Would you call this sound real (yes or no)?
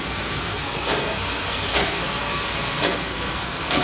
no